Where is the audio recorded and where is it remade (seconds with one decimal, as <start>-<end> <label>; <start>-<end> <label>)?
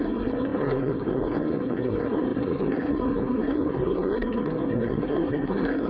0.0-5.9 remade